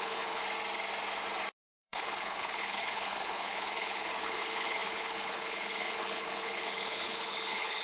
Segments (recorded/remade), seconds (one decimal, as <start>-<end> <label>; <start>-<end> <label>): 0.0-0.4 remade; 0.4-1.6 recorded; 1.6-7.8 remade